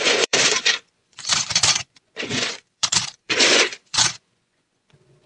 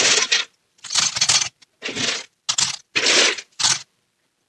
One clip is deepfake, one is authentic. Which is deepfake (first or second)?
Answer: first